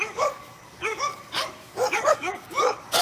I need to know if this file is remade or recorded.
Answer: remade